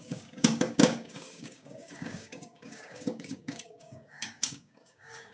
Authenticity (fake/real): fake